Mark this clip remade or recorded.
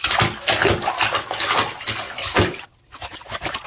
recorded